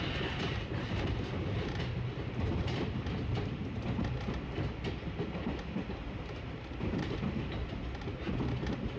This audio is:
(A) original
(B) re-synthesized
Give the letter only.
A